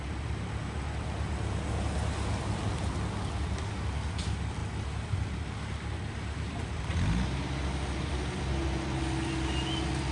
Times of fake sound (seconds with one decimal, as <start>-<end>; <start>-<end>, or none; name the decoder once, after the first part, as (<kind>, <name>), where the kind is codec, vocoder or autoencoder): none